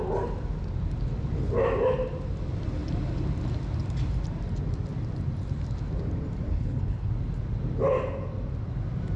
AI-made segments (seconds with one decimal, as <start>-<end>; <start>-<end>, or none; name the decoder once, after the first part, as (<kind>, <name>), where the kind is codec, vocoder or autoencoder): 6.5-7.1 (codec, HILCodec)